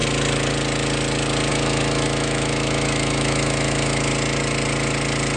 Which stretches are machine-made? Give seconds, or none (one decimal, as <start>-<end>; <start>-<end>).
1.5-4.1